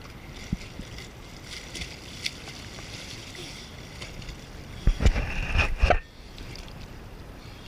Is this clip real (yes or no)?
no